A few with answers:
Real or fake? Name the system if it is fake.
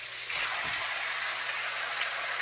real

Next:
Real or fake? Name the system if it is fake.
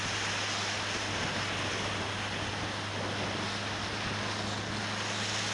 real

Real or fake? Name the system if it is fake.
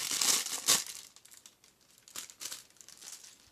real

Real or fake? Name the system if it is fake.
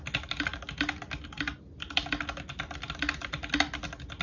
real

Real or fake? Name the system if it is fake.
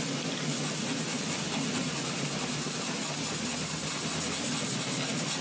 real